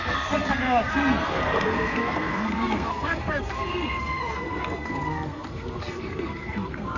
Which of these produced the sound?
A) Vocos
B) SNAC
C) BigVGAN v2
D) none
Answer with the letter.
B